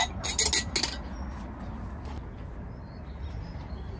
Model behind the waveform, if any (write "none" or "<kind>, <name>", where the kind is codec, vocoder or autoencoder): none